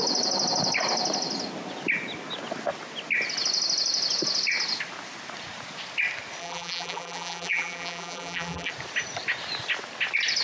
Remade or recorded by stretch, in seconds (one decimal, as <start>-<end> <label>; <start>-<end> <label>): 0.0-6.4 recorded; 6.4-8.7 remade; 8.7-10.4 recorded